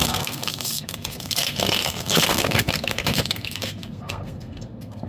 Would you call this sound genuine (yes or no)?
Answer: no